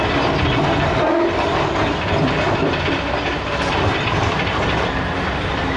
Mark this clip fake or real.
real